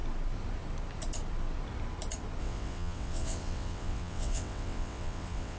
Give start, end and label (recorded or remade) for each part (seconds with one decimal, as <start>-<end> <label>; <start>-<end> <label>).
0.0-2.4 recorded; 2.4-5.6 remade